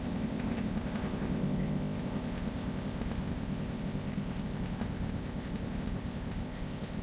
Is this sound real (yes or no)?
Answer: no